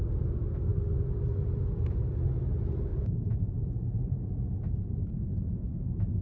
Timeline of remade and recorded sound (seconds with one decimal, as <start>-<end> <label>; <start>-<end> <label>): 0.0-2.9 recorded; 2.9-4.1 remade; 4.1-5.2 recorded; 5.2-5.7 remade; 5.7-6.2 recorded